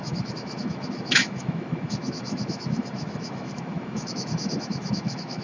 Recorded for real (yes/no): no